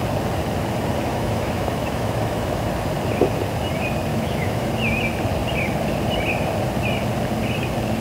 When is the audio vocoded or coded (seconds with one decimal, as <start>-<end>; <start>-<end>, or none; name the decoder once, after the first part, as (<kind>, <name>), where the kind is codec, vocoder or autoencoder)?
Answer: 1.1-2.7 (autoencoder, DAC-VAE); 4.1-4.7